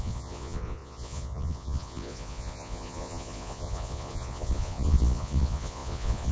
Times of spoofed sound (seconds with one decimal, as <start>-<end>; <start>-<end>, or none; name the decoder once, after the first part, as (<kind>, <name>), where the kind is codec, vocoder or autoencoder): 0.0-6.3 (vocoder, Vocos)